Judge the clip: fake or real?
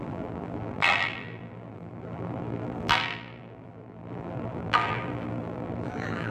fake